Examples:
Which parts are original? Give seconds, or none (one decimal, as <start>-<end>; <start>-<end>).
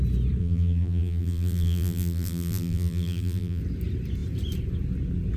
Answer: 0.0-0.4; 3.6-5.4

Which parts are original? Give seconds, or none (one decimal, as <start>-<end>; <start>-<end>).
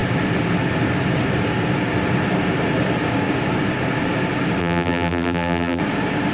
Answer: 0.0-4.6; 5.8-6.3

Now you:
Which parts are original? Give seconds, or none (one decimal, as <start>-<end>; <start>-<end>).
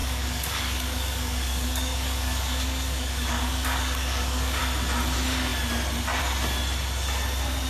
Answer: 4.6-7.7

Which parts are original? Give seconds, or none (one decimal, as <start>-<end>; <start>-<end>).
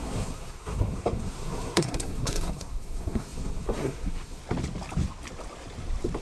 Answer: 4.4-6.2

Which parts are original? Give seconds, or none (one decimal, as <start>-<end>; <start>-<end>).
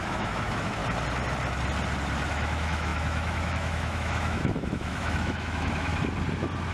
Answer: 0.8-2.3; 5.9-6.7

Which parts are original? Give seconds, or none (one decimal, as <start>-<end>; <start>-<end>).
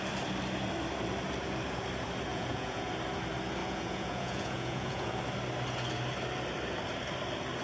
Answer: 0.0-2.3; 2.9-3.6; 5.2-7.6